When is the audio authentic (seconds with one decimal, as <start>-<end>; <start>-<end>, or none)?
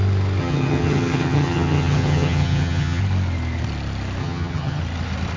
0.0-0.4; 3.0-4.2; 4.8-5.4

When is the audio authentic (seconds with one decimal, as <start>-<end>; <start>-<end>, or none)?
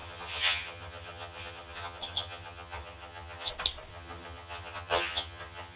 3.5-3.9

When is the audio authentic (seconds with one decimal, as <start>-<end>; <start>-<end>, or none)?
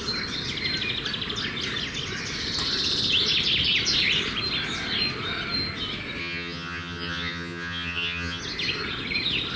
0.0-6.2; 8.4-9.6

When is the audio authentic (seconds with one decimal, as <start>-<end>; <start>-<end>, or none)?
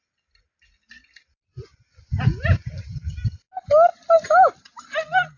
0.0-5.4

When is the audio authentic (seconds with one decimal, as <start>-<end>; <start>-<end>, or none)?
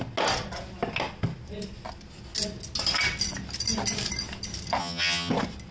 0.0-4.8; 5.3-5.7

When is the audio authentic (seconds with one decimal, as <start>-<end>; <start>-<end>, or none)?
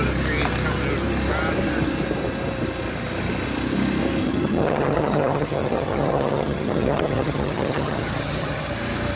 0.0-4.2; 8.7-9.2